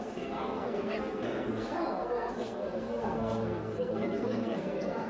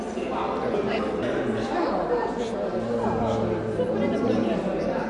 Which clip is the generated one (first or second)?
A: first